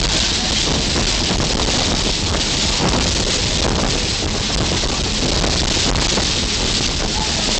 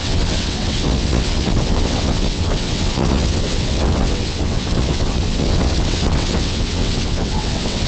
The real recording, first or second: first